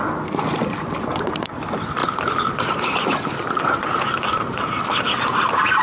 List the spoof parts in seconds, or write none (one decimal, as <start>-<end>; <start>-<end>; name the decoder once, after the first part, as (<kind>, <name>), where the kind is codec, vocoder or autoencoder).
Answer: 2.0-5.0 (vocoder, BigVGAN v2)